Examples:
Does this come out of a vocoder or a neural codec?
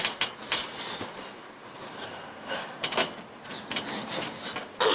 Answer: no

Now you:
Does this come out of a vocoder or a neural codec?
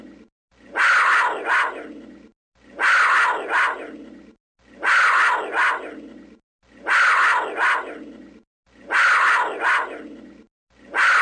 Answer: no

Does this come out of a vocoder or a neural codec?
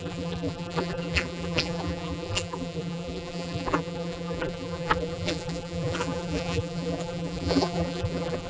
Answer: yes